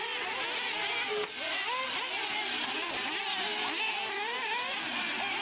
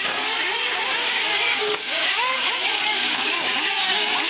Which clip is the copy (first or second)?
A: second